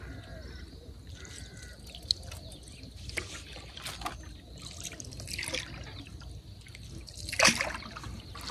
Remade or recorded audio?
recorded